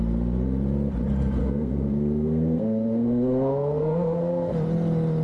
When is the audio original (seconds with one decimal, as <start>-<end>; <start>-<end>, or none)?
0.0-1.4; 4.5-5.2